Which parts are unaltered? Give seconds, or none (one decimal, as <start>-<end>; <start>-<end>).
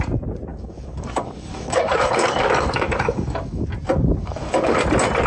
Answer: 0.0-0.5; 3.7-4.2; 4.8-5.3